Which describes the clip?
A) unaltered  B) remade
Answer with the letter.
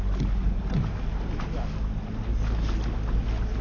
A